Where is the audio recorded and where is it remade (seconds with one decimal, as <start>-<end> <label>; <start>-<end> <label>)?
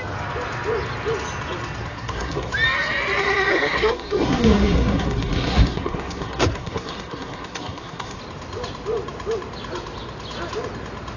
0.0-1.9 recorded; 1.9-2.5 remade; 2.5-3.5 recorded; 3.5-8.2 remade; 8.2-11.2 recorded